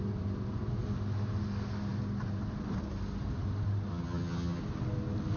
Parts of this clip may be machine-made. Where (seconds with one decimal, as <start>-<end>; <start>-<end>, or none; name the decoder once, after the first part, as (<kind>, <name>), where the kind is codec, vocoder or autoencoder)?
3.9-4.6 (vocoder, HiFi-GAN)